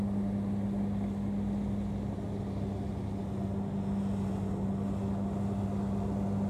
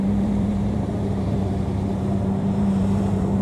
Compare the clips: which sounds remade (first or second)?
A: second